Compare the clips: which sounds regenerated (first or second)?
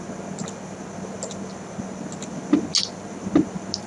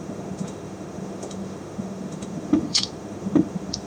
second